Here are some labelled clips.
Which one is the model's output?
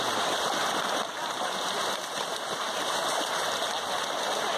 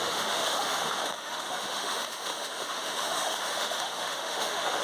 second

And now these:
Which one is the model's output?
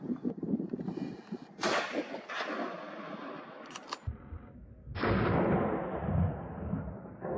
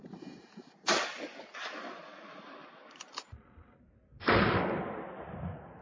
second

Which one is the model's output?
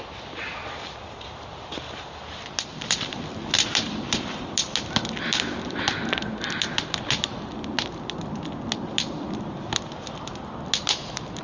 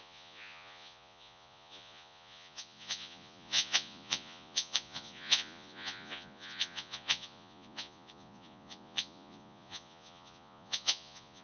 second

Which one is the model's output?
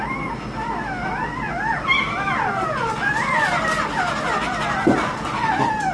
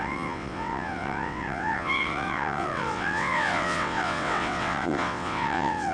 second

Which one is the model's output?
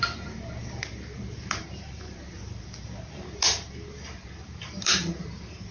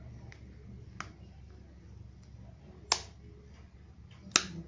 first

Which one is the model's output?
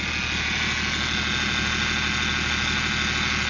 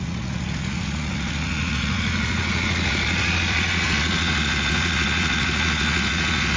second